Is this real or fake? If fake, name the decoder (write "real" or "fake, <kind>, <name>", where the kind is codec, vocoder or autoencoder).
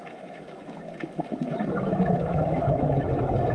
fake, autoencoder, DAC-VAE